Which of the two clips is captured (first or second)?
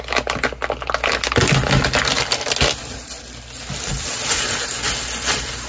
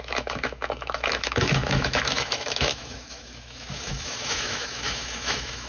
first